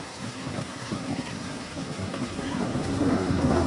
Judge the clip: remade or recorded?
remade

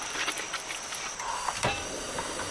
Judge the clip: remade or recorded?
recorded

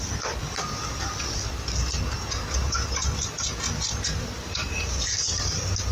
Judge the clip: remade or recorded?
recorded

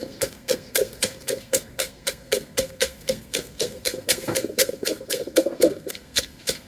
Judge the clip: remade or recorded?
remade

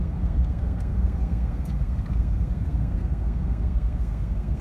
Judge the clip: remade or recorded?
remade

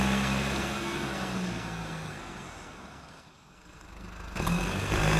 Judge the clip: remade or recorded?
remade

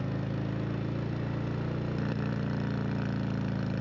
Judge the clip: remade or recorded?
recorded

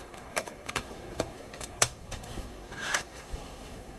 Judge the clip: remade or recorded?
remade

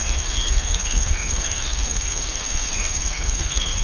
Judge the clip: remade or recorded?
remade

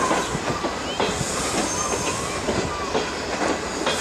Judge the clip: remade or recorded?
recorded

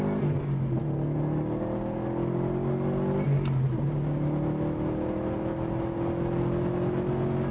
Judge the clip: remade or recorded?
recorded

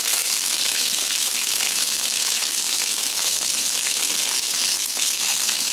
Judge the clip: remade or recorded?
remade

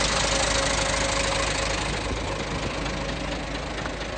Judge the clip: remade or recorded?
recorded